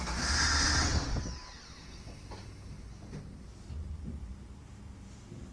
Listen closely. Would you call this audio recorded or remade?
recorded